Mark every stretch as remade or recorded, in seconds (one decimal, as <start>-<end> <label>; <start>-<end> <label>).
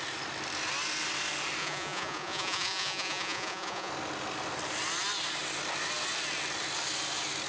0.0-1.6 recorded; 1.6-3.9 remade; 3.9-7.5 recorded